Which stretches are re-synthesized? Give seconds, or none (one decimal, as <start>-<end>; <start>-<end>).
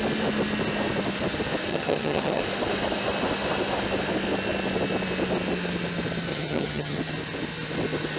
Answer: 1.7-2.4; 6.3-7.0